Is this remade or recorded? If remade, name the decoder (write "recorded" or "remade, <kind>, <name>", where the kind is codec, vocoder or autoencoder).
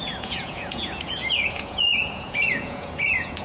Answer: remade, vocoder, Vocos